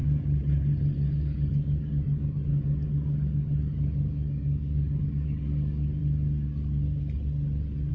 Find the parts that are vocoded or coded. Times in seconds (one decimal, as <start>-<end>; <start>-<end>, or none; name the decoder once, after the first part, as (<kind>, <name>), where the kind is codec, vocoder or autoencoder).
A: 1.1-6.0 (codec, DAC)